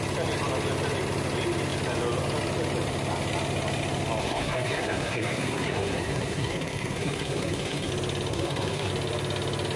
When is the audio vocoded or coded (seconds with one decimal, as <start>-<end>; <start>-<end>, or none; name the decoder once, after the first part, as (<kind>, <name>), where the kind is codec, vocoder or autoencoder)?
4.2-7.9 (codec, SNAC); 8.3-8.9